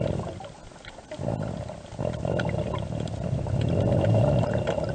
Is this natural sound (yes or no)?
yes